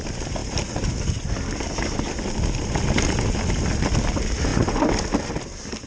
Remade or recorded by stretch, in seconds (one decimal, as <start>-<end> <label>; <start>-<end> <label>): 0.0-5.9 recorded